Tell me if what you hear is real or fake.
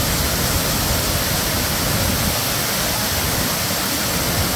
real